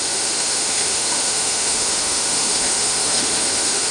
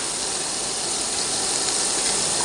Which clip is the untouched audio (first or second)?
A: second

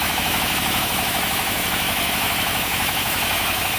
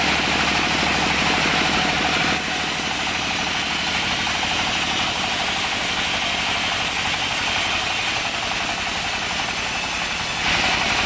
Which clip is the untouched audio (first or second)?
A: second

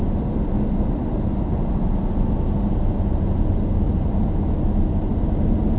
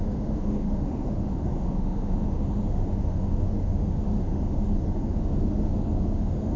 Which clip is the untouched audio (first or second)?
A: first